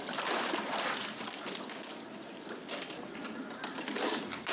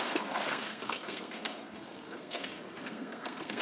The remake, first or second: second